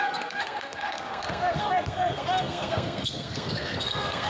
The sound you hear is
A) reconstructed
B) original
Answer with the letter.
A